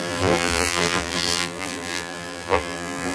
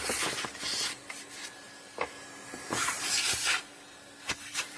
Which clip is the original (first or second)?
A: second